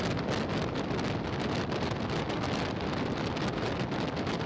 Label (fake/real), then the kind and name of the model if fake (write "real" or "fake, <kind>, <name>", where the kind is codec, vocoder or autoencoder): real